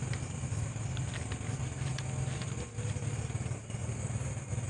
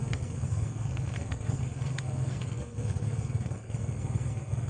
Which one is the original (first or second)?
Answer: first